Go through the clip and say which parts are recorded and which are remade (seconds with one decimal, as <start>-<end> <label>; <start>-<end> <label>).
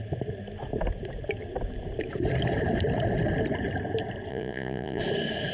0.0-4.3 recorded; 4.3-5.0 remade; 5.0-5.5 recorded